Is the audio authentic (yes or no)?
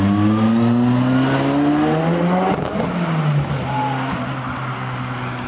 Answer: yes